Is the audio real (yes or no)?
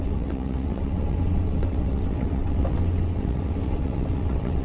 no